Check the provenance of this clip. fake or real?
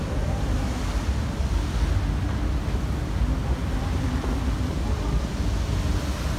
real